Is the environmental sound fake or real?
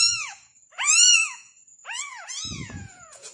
fake